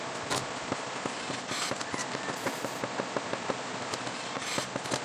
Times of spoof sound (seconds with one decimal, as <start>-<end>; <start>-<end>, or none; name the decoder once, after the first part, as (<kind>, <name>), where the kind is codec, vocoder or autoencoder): 2.0-5.0 (vocoder, BigVGAN v2)